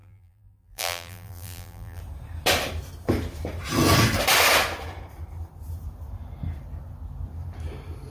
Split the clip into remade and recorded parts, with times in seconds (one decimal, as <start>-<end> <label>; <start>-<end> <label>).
0.0-2.0 remade; 2.0-8.1 recorded